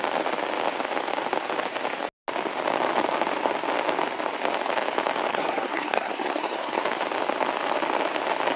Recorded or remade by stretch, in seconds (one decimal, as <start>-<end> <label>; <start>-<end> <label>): 0.0-5.3 recorded; 5.3-6.8 remade; 6.8-8.6 recorded